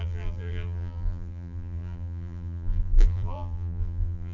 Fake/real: fake